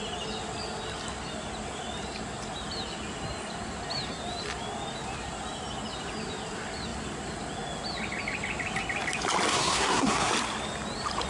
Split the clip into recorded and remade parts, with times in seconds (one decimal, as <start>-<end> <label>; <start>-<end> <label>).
0.0-9.5 recorded; 9.5-10.3 remade; 10.3-11.3 recorded